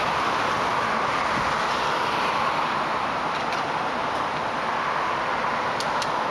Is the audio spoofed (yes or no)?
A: no